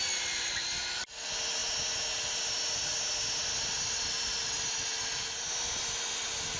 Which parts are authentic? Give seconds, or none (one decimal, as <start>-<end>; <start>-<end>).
0.0-6.6